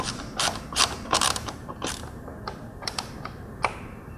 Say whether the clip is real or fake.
fake